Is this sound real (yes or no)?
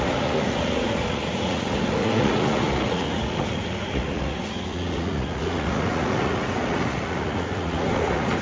no